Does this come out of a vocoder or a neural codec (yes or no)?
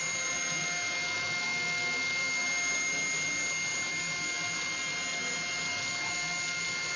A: no